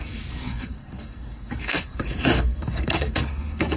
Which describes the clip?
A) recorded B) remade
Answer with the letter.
B